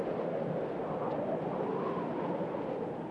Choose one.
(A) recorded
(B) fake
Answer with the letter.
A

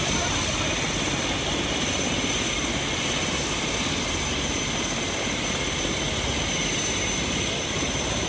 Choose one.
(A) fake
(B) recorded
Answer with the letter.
B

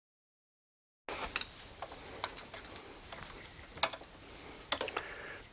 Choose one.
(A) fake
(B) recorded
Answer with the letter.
B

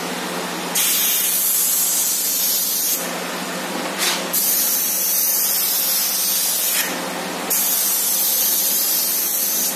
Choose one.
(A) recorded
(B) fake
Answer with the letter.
A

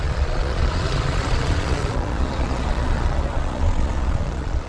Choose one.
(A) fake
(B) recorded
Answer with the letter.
A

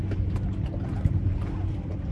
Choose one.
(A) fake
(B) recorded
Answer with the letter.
B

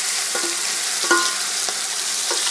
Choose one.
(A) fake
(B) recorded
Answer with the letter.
B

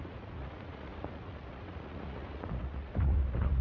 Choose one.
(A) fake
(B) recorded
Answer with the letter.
A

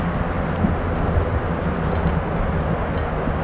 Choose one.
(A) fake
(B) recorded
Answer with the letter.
B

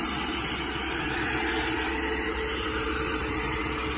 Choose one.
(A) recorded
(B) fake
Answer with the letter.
A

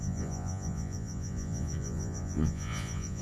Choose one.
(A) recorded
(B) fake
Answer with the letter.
B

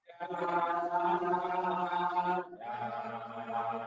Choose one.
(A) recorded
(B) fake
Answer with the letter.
A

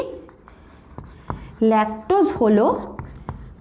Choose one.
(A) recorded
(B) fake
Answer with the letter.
A